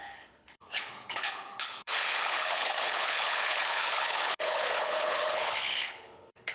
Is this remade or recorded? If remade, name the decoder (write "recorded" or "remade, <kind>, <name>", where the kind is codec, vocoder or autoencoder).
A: remade, codec, HILCodec